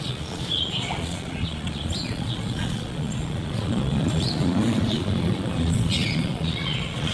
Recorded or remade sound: remade